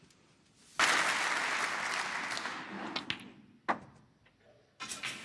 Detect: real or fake real